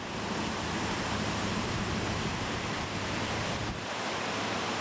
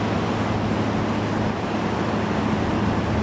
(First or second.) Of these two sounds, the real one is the second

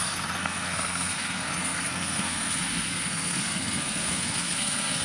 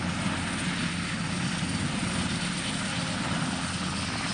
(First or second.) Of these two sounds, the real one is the second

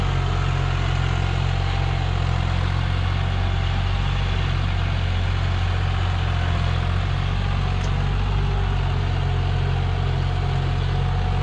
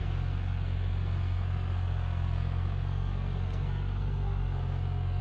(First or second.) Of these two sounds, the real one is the first